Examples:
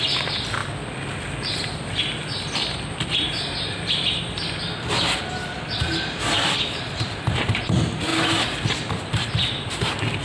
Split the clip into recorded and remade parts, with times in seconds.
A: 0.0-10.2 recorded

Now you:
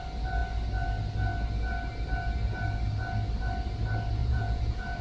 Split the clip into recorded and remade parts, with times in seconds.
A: 0.0-4.2 recorded; 4.2-5.0 remade